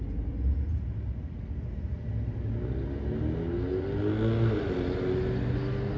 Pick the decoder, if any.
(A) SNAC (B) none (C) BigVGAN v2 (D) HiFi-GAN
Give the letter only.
B